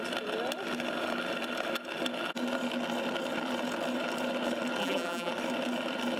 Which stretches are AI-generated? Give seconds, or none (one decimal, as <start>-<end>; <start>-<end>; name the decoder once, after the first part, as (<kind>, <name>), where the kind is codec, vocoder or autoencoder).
4.8-5.3 (vocoder, BigVGAN v2)